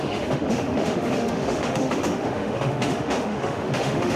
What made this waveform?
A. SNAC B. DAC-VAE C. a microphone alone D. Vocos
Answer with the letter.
B